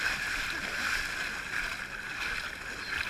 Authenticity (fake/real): real